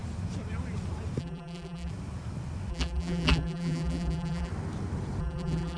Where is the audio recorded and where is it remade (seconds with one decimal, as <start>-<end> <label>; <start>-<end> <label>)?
0.0-1.2 recorded; 1.2-1.9 remade; 1.9-2.7 recorded; 2.7-4.5 remade; 4.5-5.2 recorded; 5.2-5.8 remade